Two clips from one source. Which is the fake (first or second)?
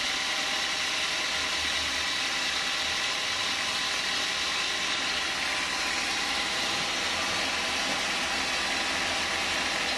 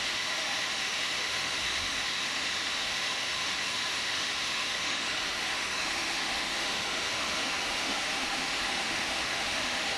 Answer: second